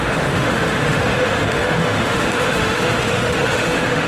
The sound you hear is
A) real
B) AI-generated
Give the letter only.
B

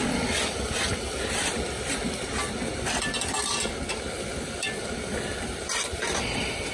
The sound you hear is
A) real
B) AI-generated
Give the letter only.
A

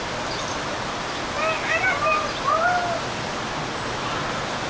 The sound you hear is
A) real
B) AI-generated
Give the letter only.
A